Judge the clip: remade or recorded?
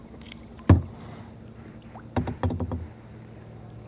recorded